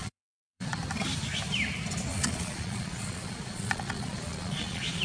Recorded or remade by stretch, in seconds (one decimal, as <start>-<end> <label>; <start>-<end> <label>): 0.0-0.8 remade; 0.8-2.1 recorded; 2.1-5.0 remade